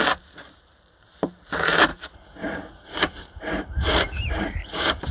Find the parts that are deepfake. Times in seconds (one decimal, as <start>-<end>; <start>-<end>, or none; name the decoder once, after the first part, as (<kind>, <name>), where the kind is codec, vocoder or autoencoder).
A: 0.0-5.1 (vocoder, BigVGAN v2)